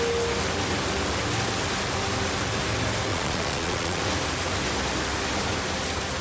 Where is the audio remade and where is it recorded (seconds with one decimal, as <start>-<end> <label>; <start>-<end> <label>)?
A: 0.0-3.1 recorded; 3.1-4.0 remade; 4.0-6.2 recorded